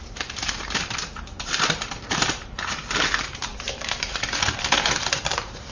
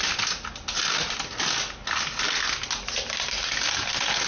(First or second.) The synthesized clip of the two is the first